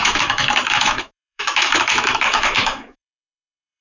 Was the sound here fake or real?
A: fake